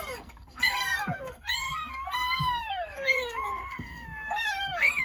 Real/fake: fake